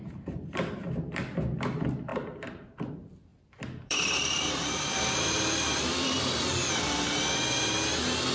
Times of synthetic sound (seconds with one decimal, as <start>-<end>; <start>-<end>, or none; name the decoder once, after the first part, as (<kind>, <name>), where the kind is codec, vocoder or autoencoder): 3.3-6.7 (vocoder, BigVGAN v2)